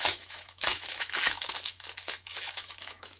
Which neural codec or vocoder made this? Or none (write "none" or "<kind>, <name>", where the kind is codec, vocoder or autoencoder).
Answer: autoencoder, DAC-VAE